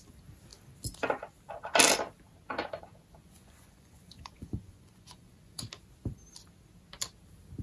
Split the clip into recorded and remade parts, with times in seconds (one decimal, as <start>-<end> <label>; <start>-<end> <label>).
0.0-3.2 recorded; 3.2-5.6 remade; 5.6-7.6 recorded